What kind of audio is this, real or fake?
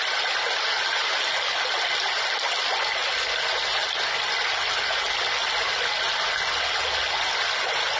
real